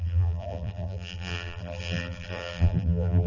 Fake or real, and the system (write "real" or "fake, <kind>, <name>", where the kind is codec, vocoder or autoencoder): fake, vocoder, BigVGAN v2